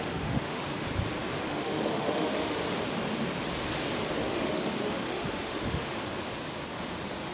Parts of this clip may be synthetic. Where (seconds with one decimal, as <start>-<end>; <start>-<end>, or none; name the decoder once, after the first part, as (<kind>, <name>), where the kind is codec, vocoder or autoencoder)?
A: 0.0-0.6 (autoencoder, DAC-VAE); 1.4-2.6; 4.2-5.9